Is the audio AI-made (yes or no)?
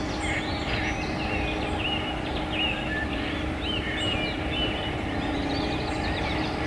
no